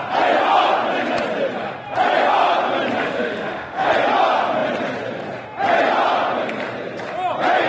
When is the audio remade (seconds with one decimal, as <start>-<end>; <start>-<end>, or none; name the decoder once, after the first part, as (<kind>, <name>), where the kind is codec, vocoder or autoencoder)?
3.0-3.9 (autoencoder, DAC-VAE)